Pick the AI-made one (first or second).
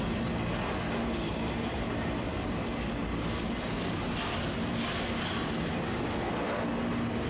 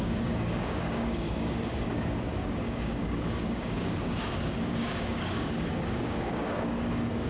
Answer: second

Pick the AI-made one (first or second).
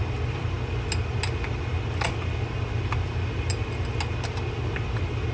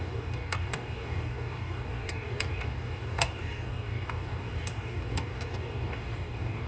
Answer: second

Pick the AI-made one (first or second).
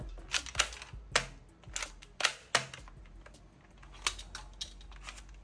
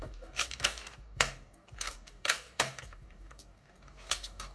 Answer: second